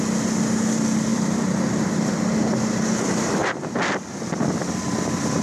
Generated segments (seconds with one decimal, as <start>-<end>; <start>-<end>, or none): 1.1-2.1; 3.4-4.8